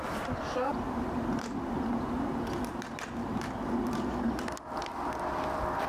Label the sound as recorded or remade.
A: recorded